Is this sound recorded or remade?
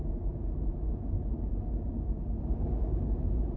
recorded